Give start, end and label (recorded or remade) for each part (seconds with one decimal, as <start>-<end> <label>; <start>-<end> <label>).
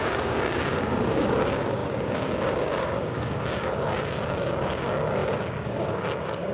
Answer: 0.0-6.5 remade